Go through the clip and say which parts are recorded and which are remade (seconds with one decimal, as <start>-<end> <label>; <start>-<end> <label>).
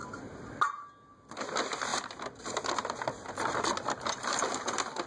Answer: 0.0-5.1 recorded